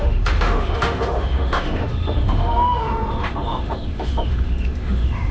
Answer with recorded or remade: remade